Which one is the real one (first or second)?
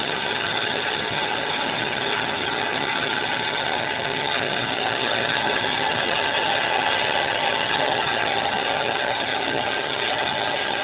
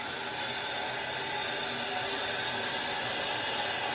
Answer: second